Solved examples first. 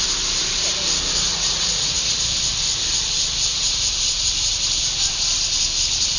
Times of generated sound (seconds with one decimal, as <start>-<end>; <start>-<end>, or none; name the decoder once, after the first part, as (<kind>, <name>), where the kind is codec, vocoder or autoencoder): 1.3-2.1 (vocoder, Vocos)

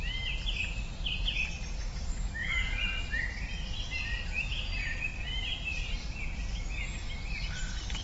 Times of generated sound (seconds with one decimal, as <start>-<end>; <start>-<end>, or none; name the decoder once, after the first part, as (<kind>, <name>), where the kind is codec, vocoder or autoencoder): 2.4-3.2 (vocoder, Vocos); 4.5-5.0

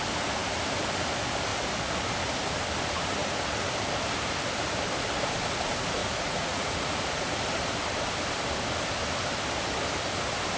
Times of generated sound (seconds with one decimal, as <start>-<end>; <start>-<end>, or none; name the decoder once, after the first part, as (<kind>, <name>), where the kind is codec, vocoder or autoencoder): 6.0-7.4 (vocoder, Vocos)

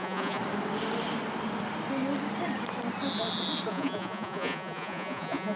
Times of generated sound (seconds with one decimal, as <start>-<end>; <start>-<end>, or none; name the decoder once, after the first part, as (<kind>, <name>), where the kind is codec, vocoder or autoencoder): 0.0-0.4 (vocoder, Vocos); 3.7-5.6

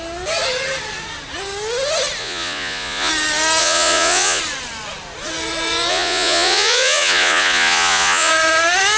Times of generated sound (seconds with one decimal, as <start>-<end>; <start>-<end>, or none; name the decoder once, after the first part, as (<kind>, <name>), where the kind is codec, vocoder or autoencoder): 2.2-3.1 (vocoder, Vocos); 3.6-4.4; 5.9-8.3

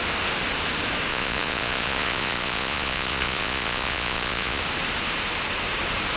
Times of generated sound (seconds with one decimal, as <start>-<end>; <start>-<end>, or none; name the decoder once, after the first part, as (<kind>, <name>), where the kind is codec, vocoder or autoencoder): 1.1-4.6 (vocoder, Vocos)

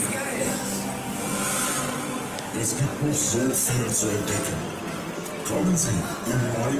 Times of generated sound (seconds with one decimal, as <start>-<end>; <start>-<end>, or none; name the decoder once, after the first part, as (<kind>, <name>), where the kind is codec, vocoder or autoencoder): none

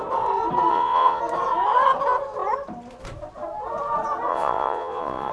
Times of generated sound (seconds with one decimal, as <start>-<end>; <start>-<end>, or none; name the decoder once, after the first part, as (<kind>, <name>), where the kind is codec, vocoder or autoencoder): 0.7-1.2 (vocoder, Vocos); 4.3-5.3